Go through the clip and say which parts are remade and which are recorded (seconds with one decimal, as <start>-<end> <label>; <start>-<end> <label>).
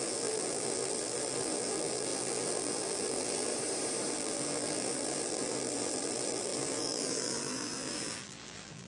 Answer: 0.0-3.5 remade; 3.5-4.1 recorded; 4.1-8.9 remade